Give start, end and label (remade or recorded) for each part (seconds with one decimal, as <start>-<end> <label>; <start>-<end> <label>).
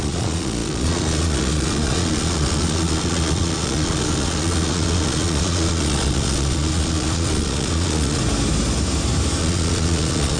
0.0-8.2 remade; 8.2-9.4 recorded; 9.4-10.4 remade